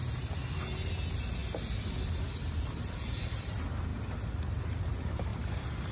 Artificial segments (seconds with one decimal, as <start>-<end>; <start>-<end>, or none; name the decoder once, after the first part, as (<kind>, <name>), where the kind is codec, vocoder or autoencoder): none